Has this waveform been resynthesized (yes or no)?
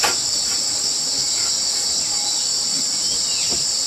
no